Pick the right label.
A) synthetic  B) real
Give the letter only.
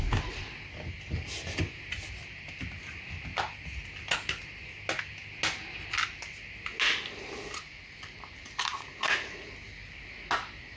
B